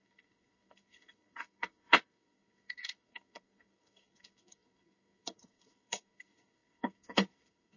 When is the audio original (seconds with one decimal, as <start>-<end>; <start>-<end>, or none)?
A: none